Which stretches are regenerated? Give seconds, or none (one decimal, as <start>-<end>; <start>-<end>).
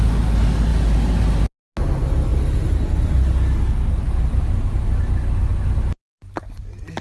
none